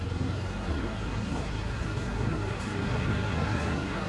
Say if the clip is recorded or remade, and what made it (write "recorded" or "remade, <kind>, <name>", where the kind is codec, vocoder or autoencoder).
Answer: remade, codec, SNAC